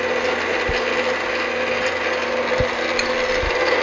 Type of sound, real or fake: real